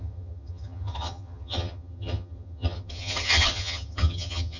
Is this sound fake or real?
fake